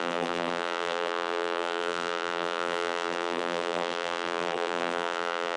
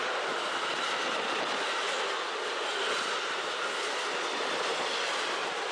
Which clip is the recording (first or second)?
second